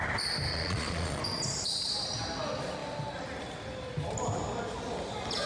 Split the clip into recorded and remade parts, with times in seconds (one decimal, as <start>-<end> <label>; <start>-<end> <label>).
0.0-0.5 recorded; 0.5-1.2 remade; 1.2-5.5 recorded